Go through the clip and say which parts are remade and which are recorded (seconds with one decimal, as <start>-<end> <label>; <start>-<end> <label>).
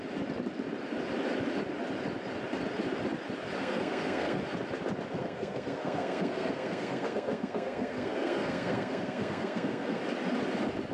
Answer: 0.0-3.6 recorded; 3.6-4.4 remade; 4.4-5.2 recorded; 5.2-10.0 remade; 10.0-10.9 recorded